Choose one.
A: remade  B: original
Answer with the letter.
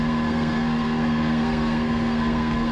A